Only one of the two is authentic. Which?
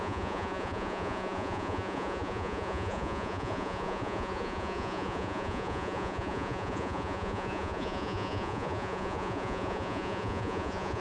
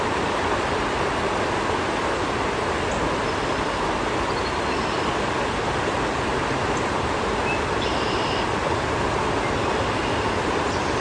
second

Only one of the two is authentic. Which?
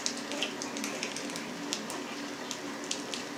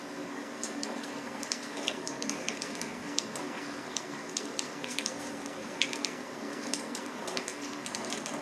first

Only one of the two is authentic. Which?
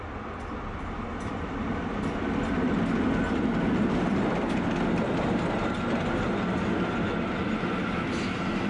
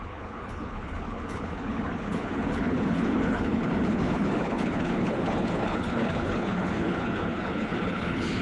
first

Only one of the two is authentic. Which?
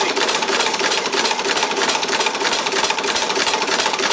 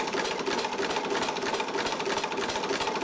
second